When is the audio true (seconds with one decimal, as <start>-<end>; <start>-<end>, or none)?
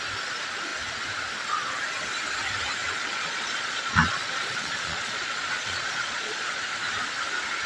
0.0-2.8; 6.6-7.7